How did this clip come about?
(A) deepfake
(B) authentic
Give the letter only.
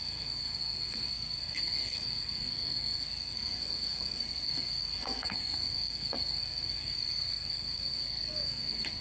A